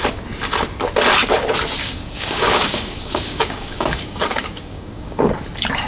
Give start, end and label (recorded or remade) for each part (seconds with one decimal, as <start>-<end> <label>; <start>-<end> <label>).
0.0-1.8 recorded; 1.8-5.3 remade; 5.3-5.9 recorded